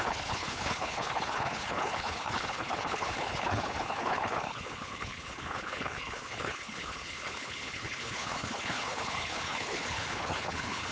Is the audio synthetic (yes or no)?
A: yes